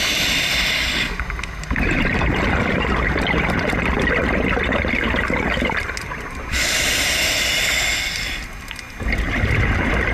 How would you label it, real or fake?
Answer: real